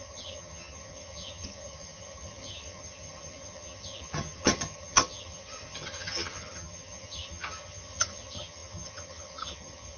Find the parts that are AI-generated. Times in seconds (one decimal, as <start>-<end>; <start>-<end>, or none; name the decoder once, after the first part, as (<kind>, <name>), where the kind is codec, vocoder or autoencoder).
0.0-10.0 (vocoder, HiFi-GAN)

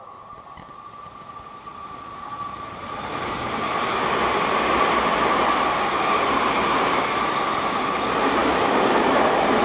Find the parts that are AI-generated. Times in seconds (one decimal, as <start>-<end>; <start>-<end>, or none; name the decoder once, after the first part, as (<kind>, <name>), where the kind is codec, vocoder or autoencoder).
none

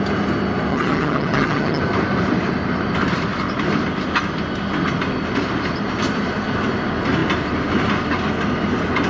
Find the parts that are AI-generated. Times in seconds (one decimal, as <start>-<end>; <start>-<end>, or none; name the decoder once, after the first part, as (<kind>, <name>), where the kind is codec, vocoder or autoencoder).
0.7-1.8 (vocoder, HiFi-GAN)

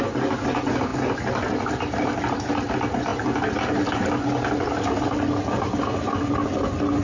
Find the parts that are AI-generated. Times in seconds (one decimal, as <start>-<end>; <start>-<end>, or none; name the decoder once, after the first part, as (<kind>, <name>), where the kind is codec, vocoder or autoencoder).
none

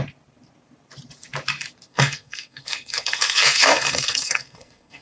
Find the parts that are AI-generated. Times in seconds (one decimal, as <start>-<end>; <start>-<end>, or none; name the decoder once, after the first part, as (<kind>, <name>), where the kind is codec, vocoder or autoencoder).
1.9-5.0 (codec, SNAC)